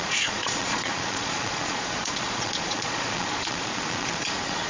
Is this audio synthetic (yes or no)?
yes